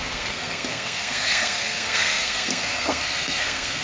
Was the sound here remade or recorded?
remade